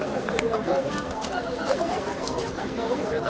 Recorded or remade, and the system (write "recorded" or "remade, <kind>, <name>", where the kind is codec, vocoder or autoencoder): remade, codec, SNAC